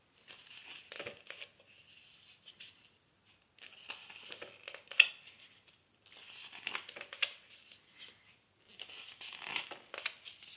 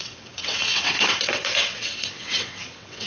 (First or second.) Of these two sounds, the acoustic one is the first